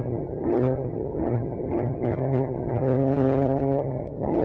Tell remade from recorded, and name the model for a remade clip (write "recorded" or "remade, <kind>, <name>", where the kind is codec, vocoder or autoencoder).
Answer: remade, vocoder, HiFi-GAN